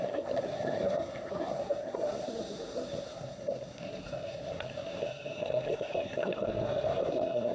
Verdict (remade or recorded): remade